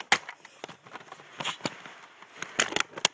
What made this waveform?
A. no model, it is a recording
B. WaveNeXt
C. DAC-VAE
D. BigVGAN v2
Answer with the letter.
A